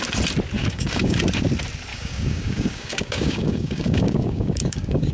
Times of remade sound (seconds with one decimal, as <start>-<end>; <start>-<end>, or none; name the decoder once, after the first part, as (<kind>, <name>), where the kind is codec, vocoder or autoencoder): 0.6-1.2 (codec, DAC); 1.9-5.1